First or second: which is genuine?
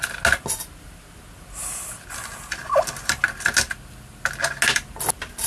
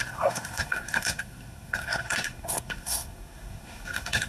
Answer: first